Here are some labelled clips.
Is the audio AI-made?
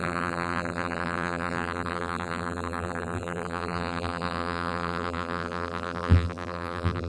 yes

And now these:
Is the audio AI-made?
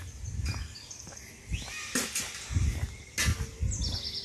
no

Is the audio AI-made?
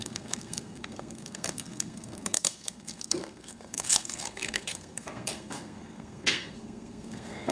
yes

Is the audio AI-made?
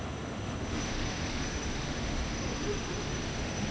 yes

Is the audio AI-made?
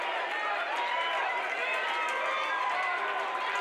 no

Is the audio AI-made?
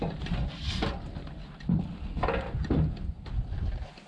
no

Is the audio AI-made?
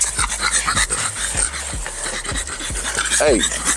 no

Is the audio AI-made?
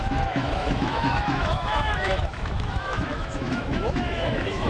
yes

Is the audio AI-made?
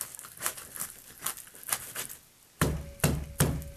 no